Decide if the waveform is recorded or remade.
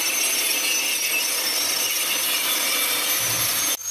recorded